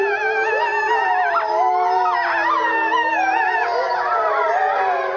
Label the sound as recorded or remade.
recorded